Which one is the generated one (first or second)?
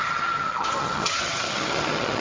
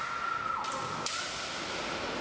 first